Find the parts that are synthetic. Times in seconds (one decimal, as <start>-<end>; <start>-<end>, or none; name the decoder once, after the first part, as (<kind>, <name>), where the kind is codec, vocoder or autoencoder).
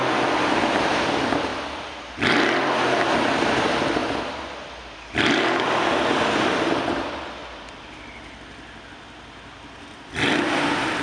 1.5-3.0 (vocoder, BigVGAN v2)